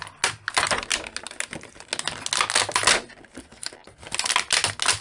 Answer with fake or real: real